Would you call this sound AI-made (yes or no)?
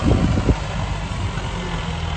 no